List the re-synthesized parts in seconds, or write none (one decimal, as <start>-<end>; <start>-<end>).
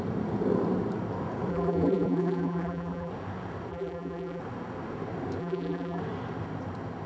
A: 1.5-3.1; 3.7-4.4; 5.4-6.0